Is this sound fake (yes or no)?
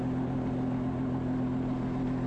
no